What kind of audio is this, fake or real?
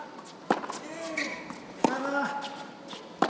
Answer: real